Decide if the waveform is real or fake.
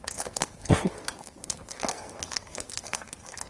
fake